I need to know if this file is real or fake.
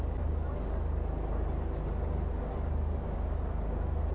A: real